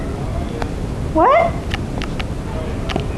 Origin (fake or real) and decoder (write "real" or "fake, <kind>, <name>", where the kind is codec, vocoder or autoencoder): real